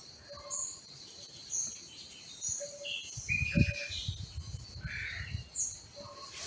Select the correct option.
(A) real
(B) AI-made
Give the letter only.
A